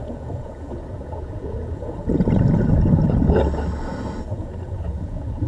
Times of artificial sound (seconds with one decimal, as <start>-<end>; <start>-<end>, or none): 0.0-3.0; 4.2-5.5